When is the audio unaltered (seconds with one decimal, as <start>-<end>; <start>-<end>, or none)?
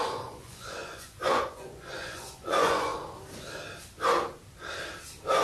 2.9-5.4